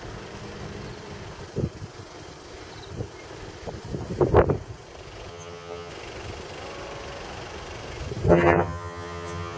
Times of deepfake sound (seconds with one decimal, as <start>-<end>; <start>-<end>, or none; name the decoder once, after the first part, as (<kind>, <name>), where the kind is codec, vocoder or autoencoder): 5.3-5.9 (vocoder, HiFi-GAN); 8.3-9.6